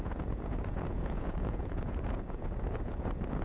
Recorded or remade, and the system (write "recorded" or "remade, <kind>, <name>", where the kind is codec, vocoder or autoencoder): remade, vocoder, Vocos